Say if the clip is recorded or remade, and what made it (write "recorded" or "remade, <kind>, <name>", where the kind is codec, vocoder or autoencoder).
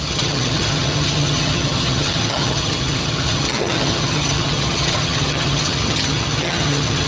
remade, vocoder, HiFi-GAN